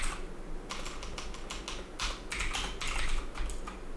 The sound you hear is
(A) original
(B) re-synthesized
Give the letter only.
A